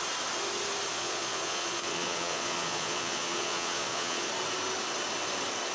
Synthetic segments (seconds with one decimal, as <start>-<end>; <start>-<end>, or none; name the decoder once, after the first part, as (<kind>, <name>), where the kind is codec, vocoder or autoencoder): 0.9-4.3 (vocoder, Vocos)